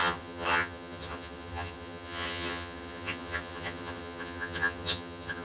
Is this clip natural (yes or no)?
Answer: no